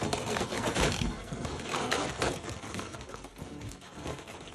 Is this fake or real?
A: fake